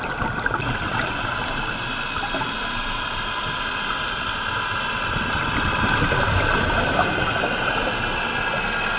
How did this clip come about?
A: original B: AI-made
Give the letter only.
A